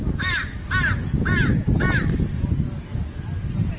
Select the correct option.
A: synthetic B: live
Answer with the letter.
B